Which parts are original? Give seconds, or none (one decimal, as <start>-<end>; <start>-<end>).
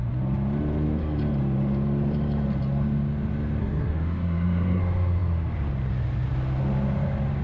0.0-3.6; 4.8-7.4